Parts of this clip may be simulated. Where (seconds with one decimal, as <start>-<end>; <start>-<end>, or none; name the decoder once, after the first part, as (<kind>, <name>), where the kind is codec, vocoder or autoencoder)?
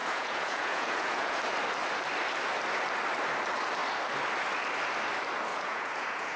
0.0-1.4 (vocoder, Vocos); 5.5-6.4